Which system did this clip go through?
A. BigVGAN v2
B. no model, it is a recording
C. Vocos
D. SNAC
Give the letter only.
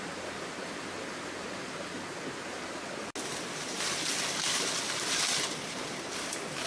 B